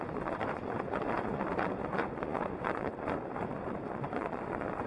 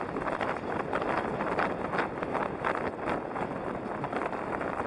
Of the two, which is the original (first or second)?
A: second